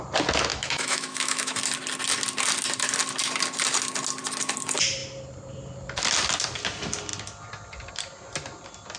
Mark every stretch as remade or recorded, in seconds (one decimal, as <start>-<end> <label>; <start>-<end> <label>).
0.0-0.5 recorded; 0.5-1.6 remade; 1.6-9.0 recorded